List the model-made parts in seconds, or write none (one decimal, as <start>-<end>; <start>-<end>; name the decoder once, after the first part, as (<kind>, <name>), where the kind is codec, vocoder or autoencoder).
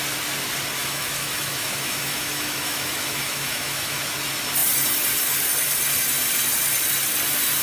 0.8-4.0 (autoencoder, DAC-VAE)